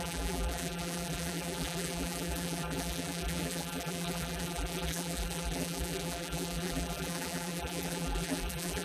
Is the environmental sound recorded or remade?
remade